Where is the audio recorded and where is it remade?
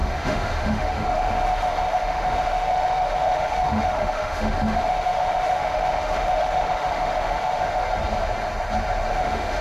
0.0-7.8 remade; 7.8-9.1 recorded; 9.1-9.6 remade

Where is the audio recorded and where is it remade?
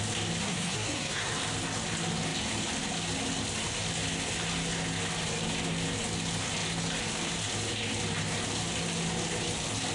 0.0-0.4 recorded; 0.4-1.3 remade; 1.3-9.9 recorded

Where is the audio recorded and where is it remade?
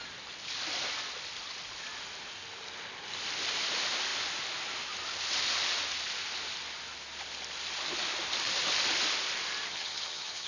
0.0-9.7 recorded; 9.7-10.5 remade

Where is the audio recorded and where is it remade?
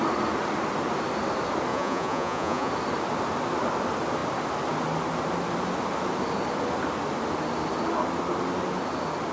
0.0-1.7 recorded; 1.7-2.7 remade; 2.7-9.3 recorded